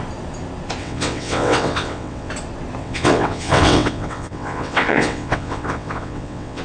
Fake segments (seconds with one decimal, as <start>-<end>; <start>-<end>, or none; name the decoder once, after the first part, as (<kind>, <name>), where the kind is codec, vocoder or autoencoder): 0.8-2.3 (vocoder, WaveNeXt); 2.8-6.6